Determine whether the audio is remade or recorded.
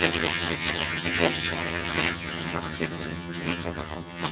remade